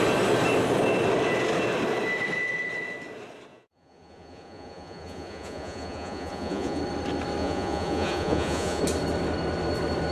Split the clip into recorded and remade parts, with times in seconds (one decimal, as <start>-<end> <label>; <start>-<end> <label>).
0.0-3.5 recorded; 3.5-6.8 remade; 6.8-7.4 recorded; 7.4-8.8 remade; 8.8-10.1 recorded